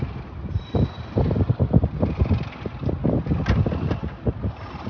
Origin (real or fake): real